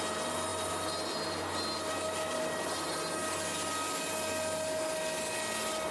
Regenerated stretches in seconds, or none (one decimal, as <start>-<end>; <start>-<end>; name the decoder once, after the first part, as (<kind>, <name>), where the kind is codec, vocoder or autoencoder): none